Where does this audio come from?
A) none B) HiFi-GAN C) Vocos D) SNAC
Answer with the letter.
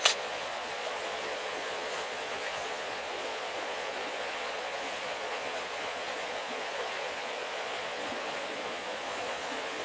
C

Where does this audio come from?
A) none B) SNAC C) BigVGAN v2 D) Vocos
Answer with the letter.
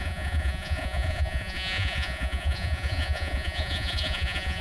D